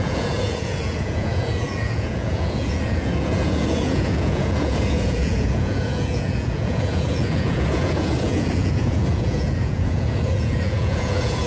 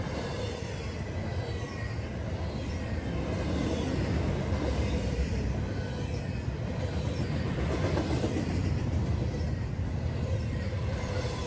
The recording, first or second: second